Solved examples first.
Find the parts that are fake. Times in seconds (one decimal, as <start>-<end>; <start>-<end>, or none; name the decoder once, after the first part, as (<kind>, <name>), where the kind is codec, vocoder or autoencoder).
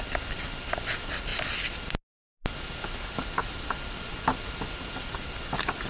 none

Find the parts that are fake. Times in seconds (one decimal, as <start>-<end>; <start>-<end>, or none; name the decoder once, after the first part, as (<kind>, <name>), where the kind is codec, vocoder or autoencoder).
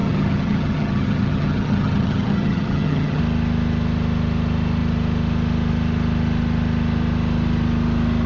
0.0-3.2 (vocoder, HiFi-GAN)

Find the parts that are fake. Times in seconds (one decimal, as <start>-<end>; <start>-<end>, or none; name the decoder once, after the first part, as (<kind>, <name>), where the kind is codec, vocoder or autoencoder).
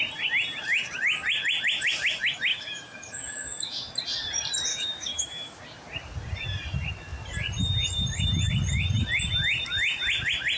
2.5-3.8 (autoencoder, DAC-VAE); 4.7-5.6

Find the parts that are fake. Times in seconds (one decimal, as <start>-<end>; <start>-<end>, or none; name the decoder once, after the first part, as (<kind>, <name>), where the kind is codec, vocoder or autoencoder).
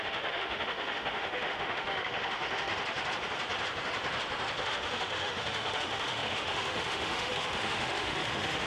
0.0-2.7 (autoencoder, DAC-VAE); 4.6-8.7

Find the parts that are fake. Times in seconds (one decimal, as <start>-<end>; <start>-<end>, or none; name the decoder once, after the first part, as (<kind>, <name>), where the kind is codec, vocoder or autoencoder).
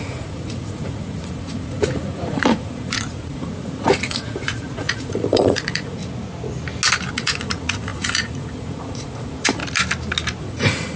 0.0-6.0 (vocoder, Vocos); 7.1-9.6; 10.4-11.0